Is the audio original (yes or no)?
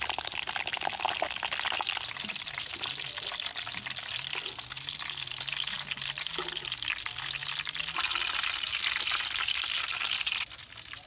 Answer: yes